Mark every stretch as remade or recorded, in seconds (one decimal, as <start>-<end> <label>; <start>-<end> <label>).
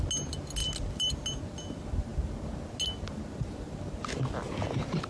0.0-5.1 recorded